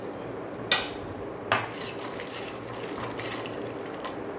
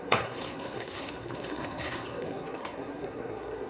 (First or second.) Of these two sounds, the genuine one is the first